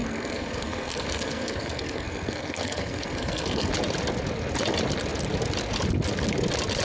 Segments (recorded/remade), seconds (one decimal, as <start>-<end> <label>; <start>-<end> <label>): 0.0-3.7 remade; 3.7-6.8 recorded

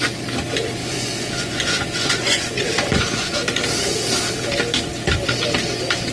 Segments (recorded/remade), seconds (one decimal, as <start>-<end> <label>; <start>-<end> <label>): 0.0-0.8 recorded; 0.8-3.3 remade; 3.3-6.1 recorded

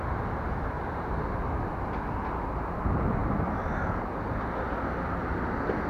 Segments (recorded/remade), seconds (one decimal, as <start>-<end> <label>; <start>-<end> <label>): 0.0-5.9 recorded

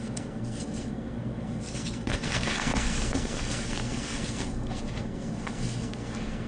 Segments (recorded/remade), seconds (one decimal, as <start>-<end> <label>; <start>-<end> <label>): 0.0-6.5 remade

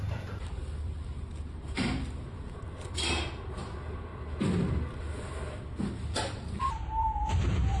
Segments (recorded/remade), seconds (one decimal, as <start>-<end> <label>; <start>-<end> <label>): 0.0-4.1 remade; 4.1-5.0 recorded; 5.0-7.8 remade